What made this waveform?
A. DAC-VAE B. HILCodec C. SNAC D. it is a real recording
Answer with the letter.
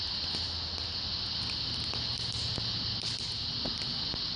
D